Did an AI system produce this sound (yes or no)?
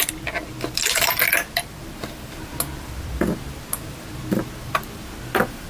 no